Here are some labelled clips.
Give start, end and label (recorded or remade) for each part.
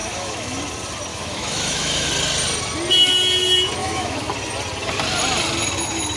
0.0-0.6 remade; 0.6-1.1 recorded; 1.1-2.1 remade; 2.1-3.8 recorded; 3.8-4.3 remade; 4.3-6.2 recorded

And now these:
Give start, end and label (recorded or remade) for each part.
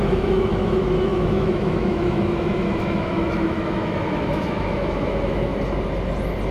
0.0-5.5 remade; 5.5-6.5 recorded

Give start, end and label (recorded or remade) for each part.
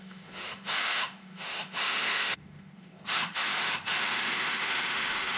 0.0-5.4 remade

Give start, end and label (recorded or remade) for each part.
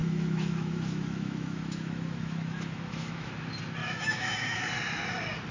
0.0-3.3 remade; 3.3-3.8 recorded; 3.8-4.7 remade; 4.7-5.5 recorded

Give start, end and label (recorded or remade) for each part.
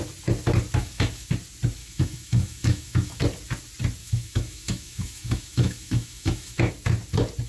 0.0-0.8 recorded; 0.8-1.3 remade; 1.3-1.8 recorded; 1.8-3.2 remade; 3.2-4.0 recorded; 4.0-6.7 remade; 6.7-7.5 recorded